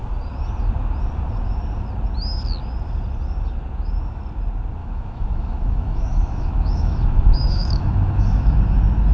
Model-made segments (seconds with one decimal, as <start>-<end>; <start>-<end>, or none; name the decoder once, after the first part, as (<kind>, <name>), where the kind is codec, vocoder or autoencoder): 4.8-8.6 (autoencoder, DAC-VAE)